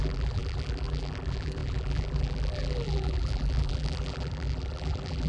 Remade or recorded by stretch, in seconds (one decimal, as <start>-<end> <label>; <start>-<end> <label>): 0.0-5.3 remade